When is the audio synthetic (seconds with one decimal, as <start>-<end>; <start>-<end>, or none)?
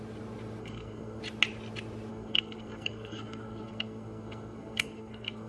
0.6-1.2; 2.1-5.5